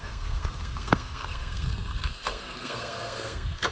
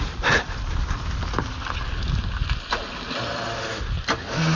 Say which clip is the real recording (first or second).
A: second